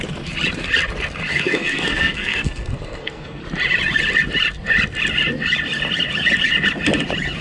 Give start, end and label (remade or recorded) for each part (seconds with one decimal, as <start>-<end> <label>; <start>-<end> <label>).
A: 0.0-1.3 recorded; 1.3-3.4 remade; 3.4-7.4 recorded